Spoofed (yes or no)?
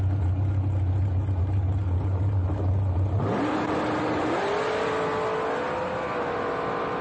no